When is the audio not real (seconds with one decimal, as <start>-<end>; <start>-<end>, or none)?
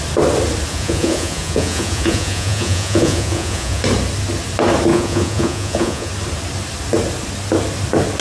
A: 0.7-3.8; 4.9-6.1